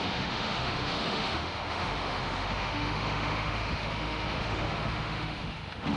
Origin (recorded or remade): remade